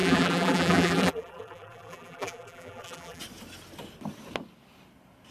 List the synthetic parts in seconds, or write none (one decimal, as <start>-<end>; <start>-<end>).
0.0-3.2